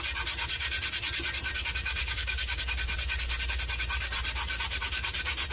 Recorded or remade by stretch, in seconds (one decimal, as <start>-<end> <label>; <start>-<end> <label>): 0.0-2.0 recorded; 2.0-2.6 remade; 2.6-5.5 recorded